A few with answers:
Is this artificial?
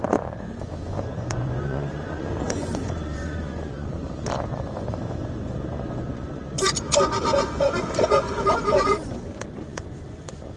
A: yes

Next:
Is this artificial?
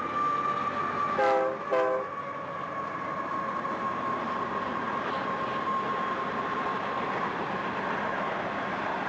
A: no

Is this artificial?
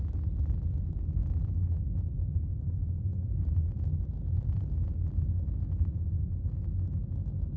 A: no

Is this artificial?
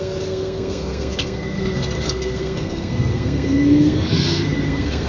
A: yes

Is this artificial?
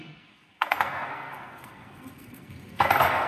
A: yes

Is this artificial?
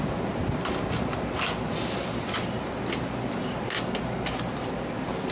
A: no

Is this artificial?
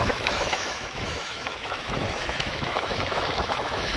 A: yes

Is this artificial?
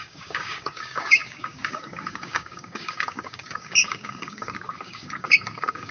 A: yes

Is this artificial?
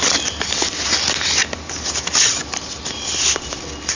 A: no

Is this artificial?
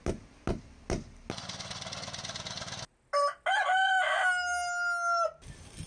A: no